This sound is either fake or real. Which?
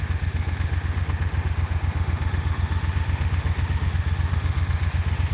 fake